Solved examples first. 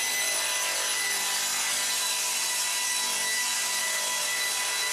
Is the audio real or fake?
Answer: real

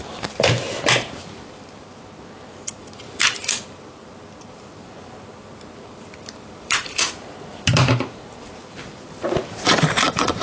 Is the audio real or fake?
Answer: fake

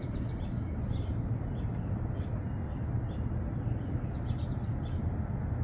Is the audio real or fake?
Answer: real